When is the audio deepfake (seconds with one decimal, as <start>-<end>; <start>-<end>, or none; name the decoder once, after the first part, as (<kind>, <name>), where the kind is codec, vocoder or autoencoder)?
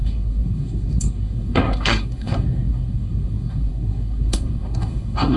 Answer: 0.0-5.4 (codec, SNAC)